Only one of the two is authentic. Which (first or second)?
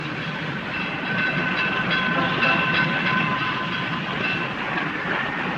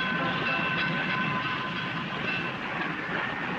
second